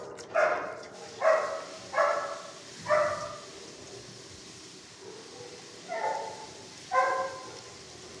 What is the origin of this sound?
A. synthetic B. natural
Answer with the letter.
B